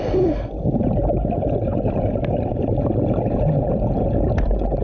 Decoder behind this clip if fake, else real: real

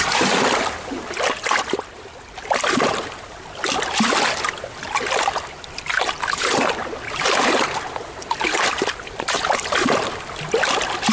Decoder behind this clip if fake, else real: real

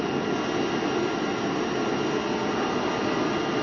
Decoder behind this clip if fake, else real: real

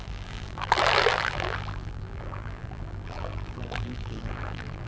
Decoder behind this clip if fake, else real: fake, vocoder, BigVGAN v2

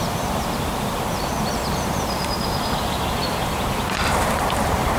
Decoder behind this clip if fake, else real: fake, vocoder, BigVGAN v2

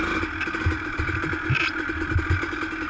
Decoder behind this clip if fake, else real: fake, vocoder, BigVGAN v2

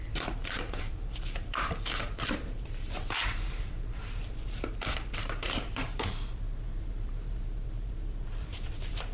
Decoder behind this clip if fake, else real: fake, vocoder, BigVGAN v2